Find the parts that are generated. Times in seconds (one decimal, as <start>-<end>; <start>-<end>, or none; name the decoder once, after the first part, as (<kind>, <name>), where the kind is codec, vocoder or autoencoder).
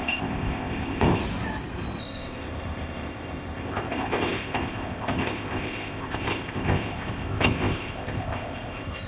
0.0-1.2 (codec, ZipCodec); 2.0-9.1